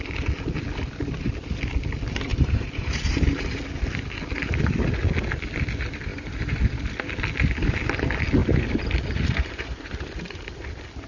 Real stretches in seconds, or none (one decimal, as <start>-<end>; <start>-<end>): 0.0-2.3; 3.2-6.1; 6.6-8.4; 10.0-11.1